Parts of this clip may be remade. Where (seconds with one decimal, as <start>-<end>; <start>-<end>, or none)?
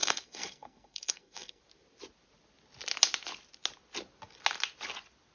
0.0-1.6